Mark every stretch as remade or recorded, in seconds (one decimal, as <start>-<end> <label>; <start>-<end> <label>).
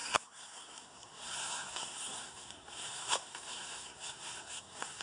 0.0-5.0 remade